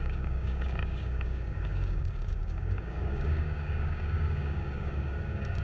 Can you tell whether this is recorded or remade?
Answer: remade